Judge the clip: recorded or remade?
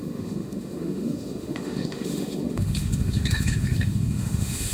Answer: remade